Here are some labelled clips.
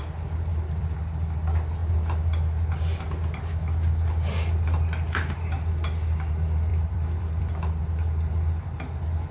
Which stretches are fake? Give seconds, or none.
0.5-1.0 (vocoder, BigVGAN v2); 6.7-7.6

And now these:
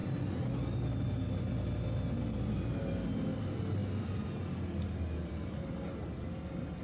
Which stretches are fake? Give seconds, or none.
none

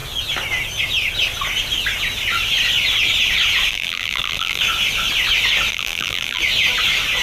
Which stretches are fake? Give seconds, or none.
3.7-4.6 (vocoder, BigVGAN v2); 5.7-6.4

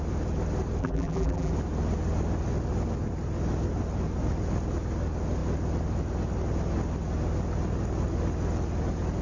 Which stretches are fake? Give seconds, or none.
0.8-1.5 (vocoder, BigVGAN v2)